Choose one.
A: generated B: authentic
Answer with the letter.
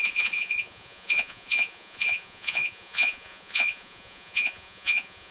A